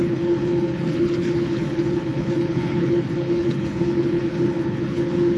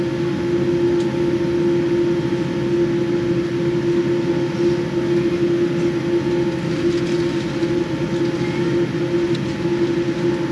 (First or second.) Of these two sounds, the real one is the second